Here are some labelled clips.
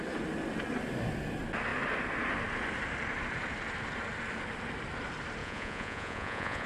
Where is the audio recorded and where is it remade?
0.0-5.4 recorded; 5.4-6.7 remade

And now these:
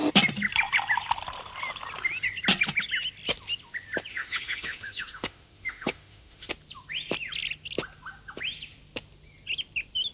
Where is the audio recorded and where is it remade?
0.0-4.1 recorded; 4.1-6.5 remade; 6.5-10.1 recorded

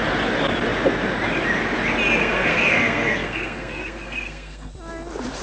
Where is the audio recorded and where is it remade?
0.0-2.2 recorded; 2.2-4.7 remade; 4.7-5.4 recorded

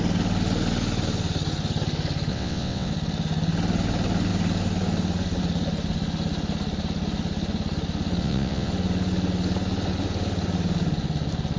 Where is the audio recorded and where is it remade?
0.0-2.3 recorded; 2.3-2.9 remade; 2.9-8.2 recorded; 8.2-8.7 remade; 8.7-11.6 recorded

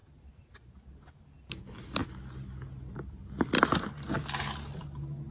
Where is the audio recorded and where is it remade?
0.0-1.6 recorded; 1.6-2.0 remade; 2.0-2.9 recorded; 2.9-4.2 remade; 4.2-5.3 recorded

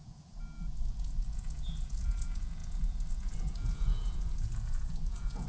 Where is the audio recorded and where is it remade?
0.0-5.5 remade

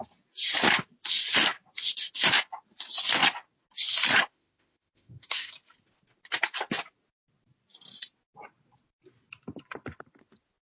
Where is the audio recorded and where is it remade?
0.0-4.3 recorded; 4.3-5.5 remade; 5.5-10.7 recorded

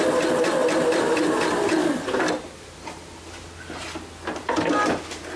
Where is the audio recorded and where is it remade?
0.0-5.4 recorded